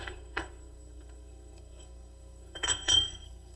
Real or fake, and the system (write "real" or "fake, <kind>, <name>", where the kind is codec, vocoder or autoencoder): fake, codec, SNAC